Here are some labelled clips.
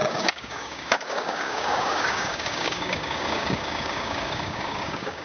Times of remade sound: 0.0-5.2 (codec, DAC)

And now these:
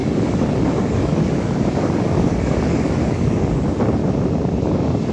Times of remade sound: 0.0-4.0 (codec, DAC); 4.6-5.1